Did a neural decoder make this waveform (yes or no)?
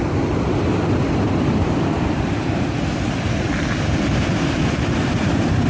no